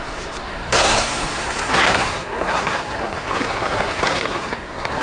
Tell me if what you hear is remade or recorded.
remade